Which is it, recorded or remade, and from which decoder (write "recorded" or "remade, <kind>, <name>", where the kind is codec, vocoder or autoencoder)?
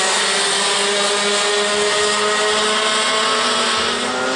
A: recorded